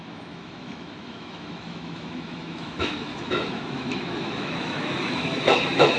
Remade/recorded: remade